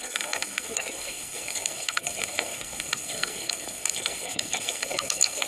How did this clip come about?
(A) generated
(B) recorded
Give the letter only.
A